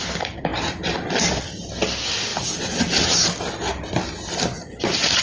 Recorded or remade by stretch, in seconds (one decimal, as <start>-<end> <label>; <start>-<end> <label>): 0.0-5.2 recorded